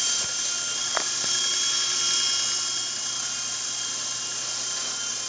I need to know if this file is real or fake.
real